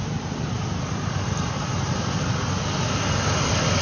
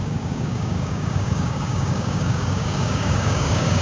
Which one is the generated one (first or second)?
second